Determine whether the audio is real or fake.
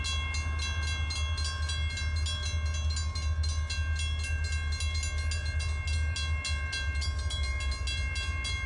real